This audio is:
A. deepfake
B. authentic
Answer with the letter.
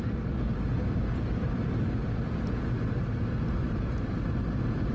B